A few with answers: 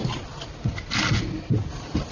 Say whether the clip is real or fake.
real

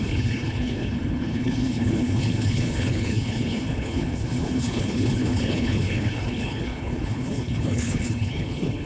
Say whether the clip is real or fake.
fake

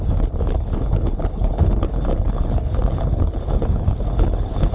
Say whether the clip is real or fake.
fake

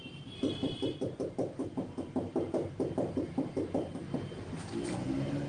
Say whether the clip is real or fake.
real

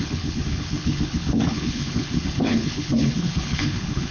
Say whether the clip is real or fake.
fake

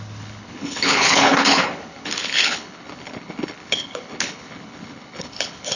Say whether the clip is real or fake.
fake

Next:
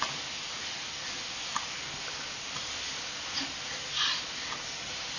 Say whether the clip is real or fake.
real